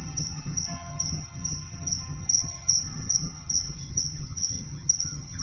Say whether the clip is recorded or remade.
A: remade